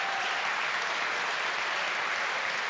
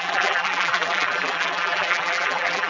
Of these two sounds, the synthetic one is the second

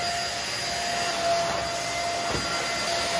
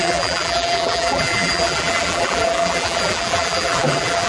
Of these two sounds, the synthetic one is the second